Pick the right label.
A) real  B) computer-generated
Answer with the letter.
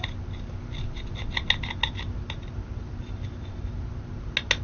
A